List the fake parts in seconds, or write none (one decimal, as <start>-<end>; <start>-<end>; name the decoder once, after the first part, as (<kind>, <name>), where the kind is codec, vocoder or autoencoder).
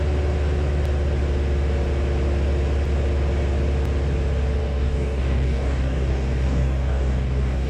4.6-7.7 (codec, DAC)